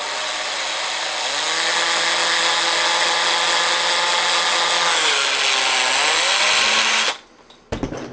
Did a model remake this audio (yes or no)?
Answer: no